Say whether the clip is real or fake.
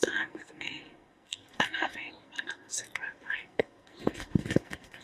fake